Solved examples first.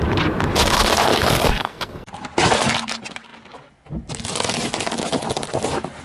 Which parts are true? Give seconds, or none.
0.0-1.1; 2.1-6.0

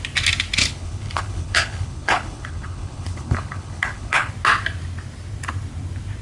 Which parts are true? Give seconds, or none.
0.0-0.6; 4.3-6.2

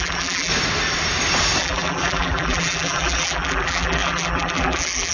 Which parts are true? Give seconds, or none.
0.5-1.6

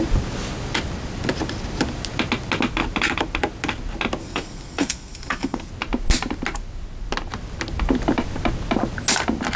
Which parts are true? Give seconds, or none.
0.0-4.2; 5.7-9.6

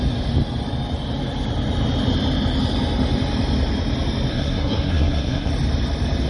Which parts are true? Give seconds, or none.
0.0-4.3; 5.5-6.3

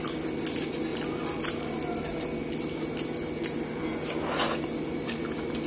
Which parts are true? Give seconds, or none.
0.0-5.7